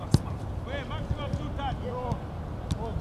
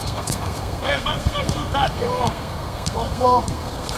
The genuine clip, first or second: first